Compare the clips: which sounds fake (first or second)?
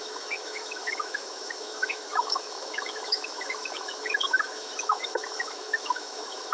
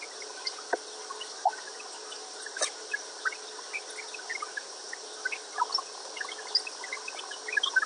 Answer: first